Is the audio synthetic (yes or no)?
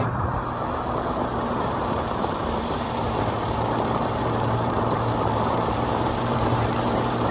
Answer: yes